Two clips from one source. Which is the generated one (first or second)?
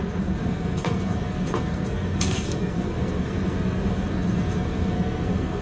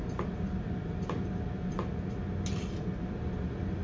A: first